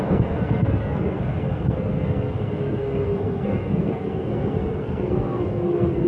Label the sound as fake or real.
fake